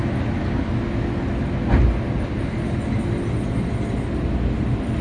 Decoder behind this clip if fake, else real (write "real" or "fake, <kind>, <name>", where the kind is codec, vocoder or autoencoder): real